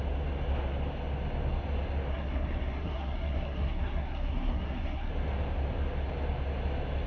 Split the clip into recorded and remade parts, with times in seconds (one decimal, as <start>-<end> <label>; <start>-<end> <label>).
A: 0.0-2.1 recorded; 2.1-5.1 remade; 5.1-7.1 recorded